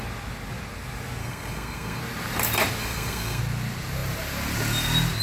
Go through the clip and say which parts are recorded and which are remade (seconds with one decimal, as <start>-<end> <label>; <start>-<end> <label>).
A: 0.0-1.2 recorded; 1.2-2.0 remade; 2.0-2.8 recorded; 2.8-3.4 remade; 3.4-5.2 recorded